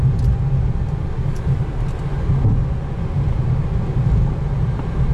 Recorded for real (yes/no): yes